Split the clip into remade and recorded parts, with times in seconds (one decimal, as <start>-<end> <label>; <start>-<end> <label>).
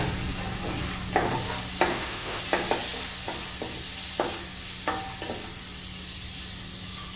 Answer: 0.0-1.9 recorded; 1.9-2.4 remade; 2.4-7.2 recorded